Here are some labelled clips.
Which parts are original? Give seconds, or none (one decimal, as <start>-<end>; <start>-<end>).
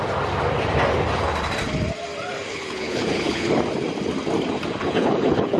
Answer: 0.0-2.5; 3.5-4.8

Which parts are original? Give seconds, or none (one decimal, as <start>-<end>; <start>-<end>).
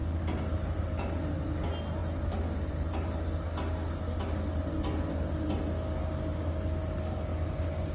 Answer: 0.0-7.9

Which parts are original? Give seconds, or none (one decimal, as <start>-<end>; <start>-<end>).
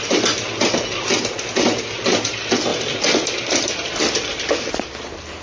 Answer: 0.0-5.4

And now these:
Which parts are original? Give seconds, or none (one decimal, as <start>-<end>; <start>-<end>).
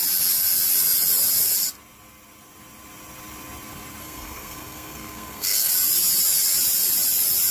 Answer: 0.0-4.0; 5.7-7.5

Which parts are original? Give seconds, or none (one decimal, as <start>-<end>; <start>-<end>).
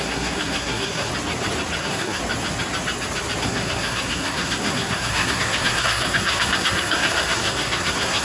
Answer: 1.1-1.8; 2.2-3.4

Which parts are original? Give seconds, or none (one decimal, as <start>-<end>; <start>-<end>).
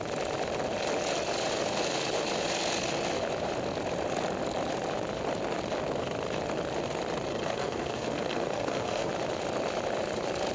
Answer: 0.0-7.3; 9.1-10.5